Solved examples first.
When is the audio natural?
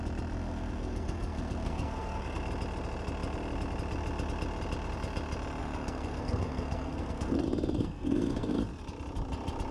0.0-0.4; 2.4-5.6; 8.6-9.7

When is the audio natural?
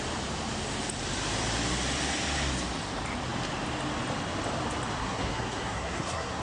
0.0-5.0